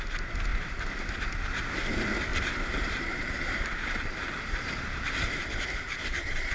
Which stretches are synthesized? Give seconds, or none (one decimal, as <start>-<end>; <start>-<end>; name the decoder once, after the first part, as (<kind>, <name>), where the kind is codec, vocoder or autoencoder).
2.3-6.5 (vocoder, BigVGAN v2)